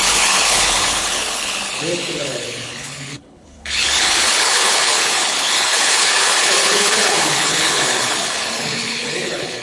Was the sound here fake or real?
fake